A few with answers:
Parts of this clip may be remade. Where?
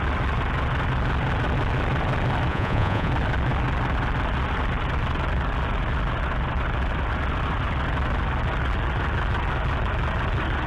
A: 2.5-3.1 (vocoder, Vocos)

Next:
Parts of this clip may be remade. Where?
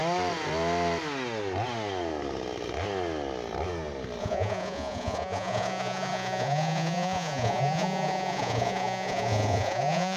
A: 4.2-10.2 (vocoder, Vocos)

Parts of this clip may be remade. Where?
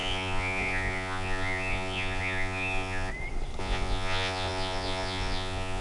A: 0.0-3.1 (vocoder, Vocos); 3.6-5.8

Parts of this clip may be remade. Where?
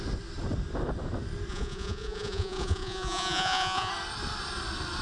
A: 1.5-3.9 (vocoder, Vocos)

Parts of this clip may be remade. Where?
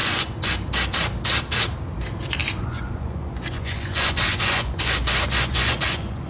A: 0.0-0.5 (vocoder, Vocos); 2.4-6.3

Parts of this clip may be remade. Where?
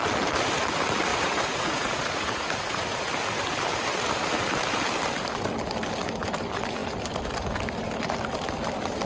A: 1.1-2.8 (vocoder, Vocos)